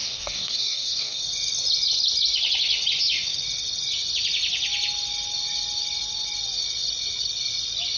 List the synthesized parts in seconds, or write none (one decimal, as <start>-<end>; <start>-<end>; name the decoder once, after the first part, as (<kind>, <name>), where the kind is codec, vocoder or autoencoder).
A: 0.0-1.2 (codec, DAC)